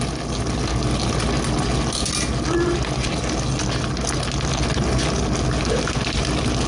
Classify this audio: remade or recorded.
recorded